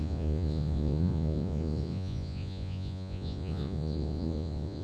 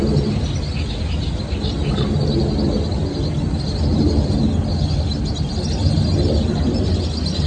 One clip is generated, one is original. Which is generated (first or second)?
first